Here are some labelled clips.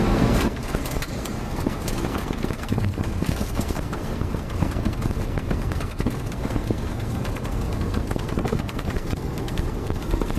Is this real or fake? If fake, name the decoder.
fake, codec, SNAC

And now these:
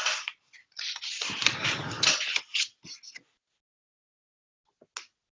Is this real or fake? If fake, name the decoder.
real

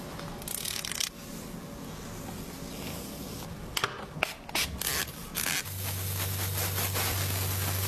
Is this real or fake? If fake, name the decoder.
real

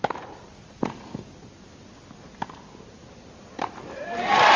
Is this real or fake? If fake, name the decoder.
real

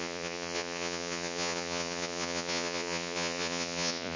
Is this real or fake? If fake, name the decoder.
fake, vocoder, Vocos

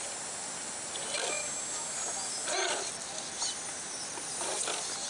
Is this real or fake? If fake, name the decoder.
real